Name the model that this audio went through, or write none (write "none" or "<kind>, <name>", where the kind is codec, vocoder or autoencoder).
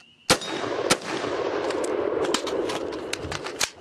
none